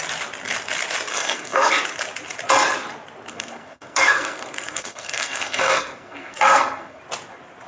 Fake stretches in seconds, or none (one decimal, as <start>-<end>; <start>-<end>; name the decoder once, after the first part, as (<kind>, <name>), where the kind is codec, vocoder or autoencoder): 1.1-1.7 (codec, SNAC); 3.3-7.0